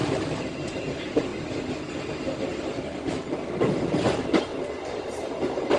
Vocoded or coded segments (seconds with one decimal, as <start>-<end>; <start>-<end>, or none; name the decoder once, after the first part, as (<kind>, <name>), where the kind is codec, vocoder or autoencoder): 0.7-1.3 (vocoder, BigVGAN v2); 2.2-4.5